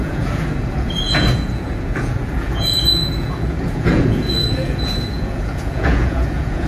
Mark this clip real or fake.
fake